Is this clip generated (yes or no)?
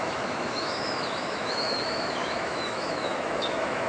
yes